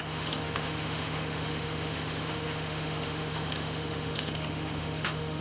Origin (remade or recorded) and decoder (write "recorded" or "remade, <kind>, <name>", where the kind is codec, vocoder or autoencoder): remade, autoencoder, DAC-VAE